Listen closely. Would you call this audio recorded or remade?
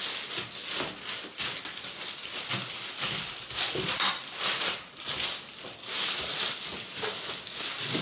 recorded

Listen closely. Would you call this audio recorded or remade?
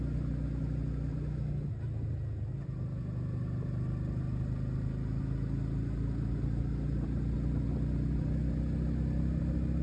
recorded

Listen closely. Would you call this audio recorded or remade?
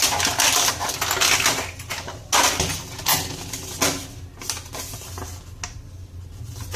recorded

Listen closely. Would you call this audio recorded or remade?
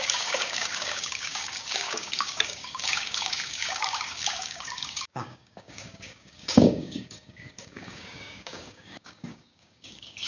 remade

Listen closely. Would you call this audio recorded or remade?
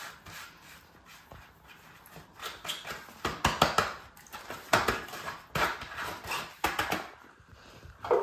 recorded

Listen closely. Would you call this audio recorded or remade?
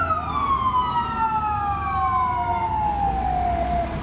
recorded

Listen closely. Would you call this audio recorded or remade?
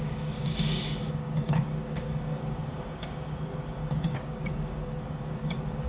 remade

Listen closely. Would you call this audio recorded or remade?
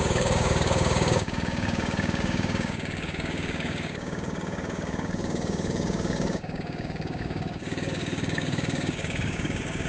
remade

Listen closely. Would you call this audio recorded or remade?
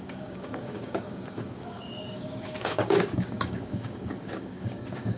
remade